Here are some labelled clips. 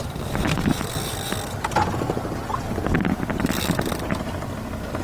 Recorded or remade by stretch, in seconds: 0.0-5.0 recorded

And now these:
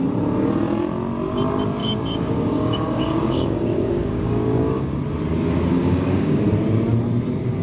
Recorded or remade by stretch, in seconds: 0.0-1.8 recorded; 1.8-5.0 remade; 5.0-5.7 recorded; 5.7-6.4 remade; 6.4-7.6 recorded

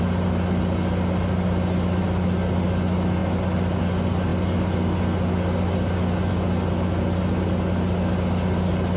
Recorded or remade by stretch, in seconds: 0.0-9.0 recorded

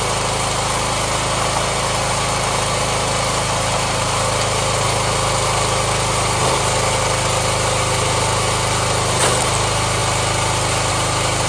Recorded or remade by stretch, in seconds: 0.0-11.5 recorded

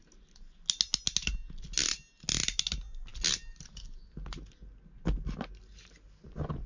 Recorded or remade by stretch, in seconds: 0.0-6.7 recorded

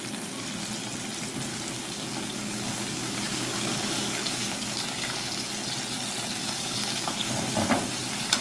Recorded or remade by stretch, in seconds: 0.0-1.5 recorded; 1.5-5.5 remade; 5.5-6.4 recorded; 6.4-7.3 remade; 7.3-8.4 recorded

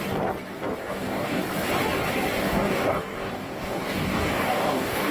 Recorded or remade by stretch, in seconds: 0.0-0.8 recorded; 0.8-1.4 remade; 1.4-2.4 recorded; 2.4-5.1 remade